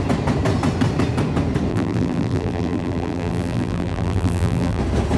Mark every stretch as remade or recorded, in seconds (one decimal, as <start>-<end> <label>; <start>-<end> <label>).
0.0-1.7 recorded; 1.7-4.8 remade; 4.8-5.2 recorded